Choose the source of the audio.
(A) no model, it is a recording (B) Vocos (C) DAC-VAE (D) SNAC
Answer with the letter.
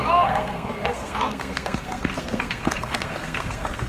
D